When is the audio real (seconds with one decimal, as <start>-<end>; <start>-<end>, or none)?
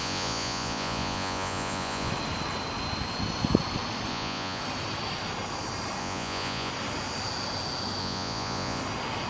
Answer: 2.1-4.1; 4.6-6.0; 6.7-8.0; 8.8-9.3